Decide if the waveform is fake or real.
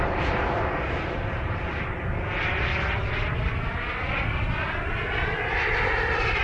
real